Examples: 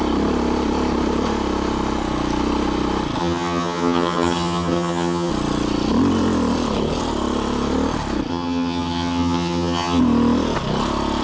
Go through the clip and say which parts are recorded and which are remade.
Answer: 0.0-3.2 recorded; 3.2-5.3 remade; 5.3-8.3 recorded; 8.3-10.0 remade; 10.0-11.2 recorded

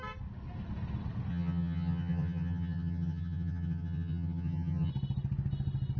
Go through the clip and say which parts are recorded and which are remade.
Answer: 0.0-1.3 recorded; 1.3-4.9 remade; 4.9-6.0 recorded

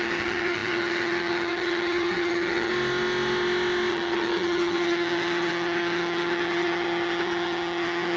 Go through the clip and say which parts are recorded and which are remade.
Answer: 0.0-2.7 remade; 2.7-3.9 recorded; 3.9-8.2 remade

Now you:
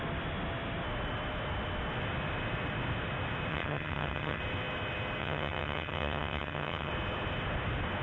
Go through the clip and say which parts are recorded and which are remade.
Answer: 0.0-3.5 recorded; 3.5-4.4 remade; 4.4-5.2 recorded; 5.2-6.9 remade; 6.9-8.0 recorded

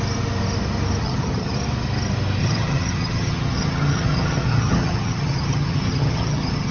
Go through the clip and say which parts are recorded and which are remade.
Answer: 0.0-1.0 recorded; 1.0-1.5 remade; 1.5-2.4 recorded; 2.4-6.7 remade

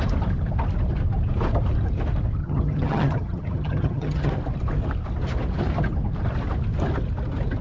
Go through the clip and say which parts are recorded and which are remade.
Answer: 0.0-2.4 recorded; 2.4-4.3 remade; 4.3-7.6 recorded

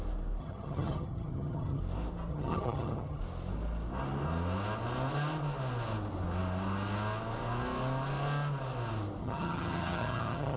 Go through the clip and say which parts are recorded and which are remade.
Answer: 0.0-0.4 recorded; 0.4-1.8 remade; 1.8-2.3 recorded; 2.3-3.2 remade; 3.2-9.2 recorded; 9.2-10.6 remade

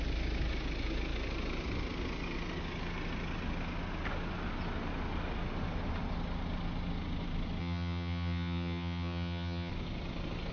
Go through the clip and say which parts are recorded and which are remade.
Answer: 0.0-7.6 recorded; 7.6-9.7 remade; 9.7-10.5 recorded